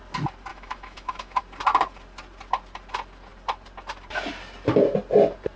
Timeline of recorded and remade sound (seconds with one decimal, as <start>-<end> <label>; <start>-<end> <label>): 0.0-0.5 recorded; 0.5-1.4 remade; 1.4-5.6 recorded